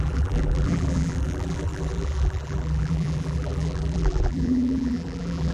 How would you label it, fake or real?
fake